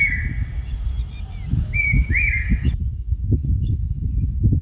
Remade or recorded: recorded